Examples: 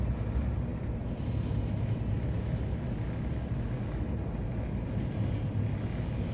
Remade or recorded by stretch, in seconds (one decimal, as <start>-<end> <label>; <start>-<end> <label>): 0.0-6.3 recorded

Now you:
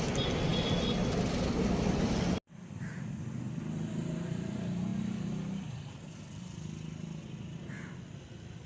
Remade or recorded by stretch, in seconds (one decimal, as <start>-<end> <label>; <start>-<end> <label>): 0.0-8.7 recorded

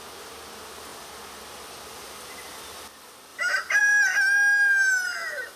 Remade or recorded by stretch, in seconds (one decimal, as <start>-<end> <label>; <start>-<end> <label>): 0.0-5.6 recorded

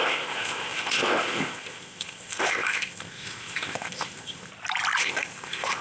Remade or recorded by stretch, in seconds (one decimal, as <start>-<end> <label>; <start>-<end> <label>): 0.0-4.5 remade; 4.5-5.0 recorded; 5.0-5.8 remade

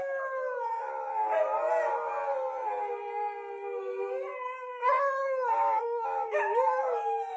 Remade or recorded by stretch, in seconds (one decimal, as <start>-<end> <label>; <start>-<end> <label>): 0.0-1.1 remade; 1.1-5.2 recorded; 5.2-7.4 remade